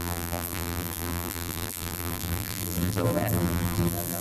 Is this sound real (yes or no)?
no